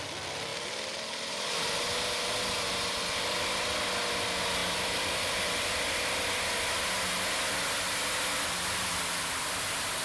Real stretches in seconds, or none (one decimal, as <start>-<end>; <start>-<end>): 0.0-10.0